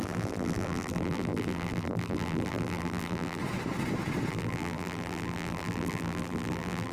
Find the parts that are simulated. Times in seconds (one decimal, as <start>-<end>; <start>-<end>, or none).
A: 0.0-3.4; 4.3-6.9